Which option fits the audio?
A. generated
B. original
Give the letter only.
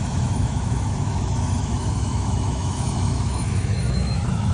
A